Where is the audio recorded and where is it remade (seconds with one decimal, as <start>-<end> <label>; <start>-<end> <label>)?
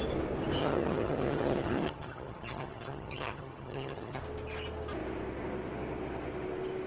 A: 0.0-0.6 recorded; 0.6-4.2 remade; 4.2-6.9 recorded